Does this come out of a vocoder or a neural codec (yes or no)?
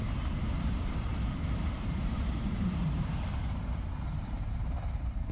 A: yes